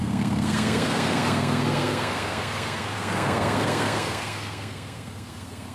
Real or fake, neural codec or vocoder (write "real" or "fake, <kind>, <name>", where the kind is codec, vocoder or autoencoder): fake, codec, SNAC